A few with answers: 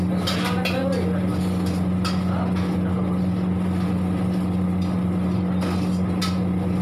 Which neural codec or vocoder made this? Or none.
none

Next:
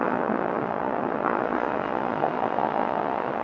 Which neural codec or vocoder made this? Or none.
vocoder, Vocos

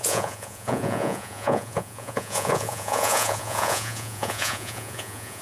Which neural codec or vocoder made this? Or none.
vocoder, Vocos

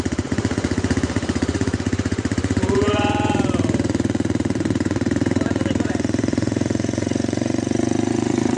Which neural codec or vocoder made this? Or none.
vocoder, Vocos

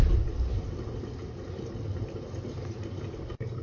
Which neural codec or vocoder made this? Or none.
none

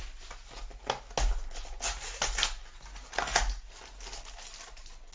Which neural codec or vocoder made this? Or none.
none